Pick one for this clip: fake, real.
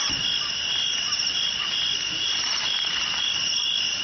real